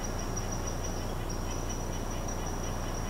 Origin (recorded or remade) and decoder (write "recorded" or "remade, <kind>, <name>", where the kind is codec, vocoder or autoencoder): recorded